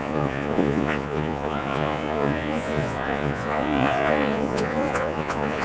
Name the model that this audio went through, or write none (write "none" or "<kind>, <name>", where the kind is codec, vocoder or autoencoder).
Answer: vocoder, Vocos